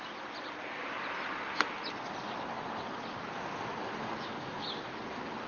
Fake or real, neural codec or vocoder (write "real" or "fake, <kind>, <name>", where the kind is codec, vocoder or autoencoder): real